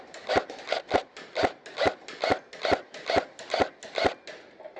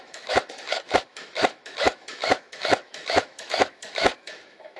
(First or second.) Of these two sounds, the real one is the first